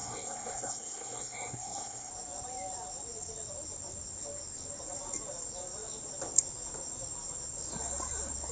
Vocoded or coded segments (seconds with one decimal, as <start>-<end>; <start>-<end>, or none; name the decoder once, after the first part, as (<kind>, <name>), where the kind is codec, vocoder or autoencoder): 0.0-2.1 (codec, SNAC)